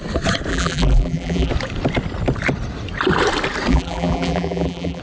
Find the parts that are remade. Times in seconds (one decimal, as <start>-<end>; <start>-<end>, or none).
0.5-1.5; 3.7-5.0